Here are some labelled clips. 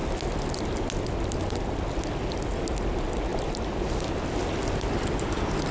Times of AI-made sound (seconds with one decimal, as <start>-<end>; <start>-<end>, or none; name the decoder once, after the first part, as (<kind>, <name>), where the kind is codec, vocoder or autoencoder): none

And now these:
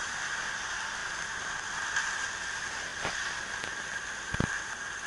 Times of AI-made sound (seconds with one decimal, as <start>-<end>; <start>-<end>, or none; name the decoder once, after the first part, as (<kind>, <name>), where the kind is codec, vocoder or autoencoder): none

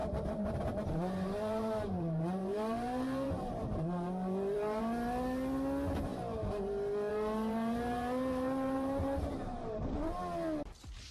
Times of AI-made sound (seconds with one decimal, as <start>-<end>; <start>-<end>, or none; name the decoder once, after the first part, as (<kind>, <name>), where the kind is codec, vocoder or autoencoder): 0.0-4.8 (vocoder, BigVGAN v2); 7.1-9.8